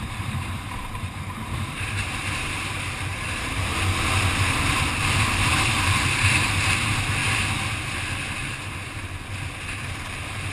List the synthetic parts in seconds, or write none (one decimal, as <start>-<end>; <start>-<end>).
0.0-3.7; 5.4-7.2; 10.1-10.5